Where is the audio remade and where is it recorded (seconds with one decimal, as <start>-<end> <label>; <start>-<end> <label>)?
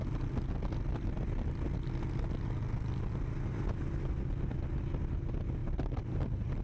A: 0.0-5.6 recorded; 5.6-6.6 remade